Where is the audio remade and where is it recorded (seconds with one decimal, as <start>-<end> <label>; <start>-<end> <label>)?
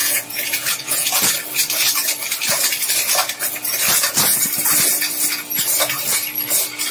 0.0-1.3 remade; 1.3-6.9 recorded